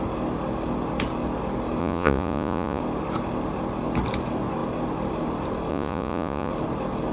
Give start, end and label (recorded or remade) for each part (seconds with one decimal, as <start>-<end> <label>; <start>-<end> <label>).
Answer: 0.0-1.8 recorded; 1.8-2.8 remade; 2.8-5.7 recorded; 5.7-6.5 remade; 6.5-7.1 recorded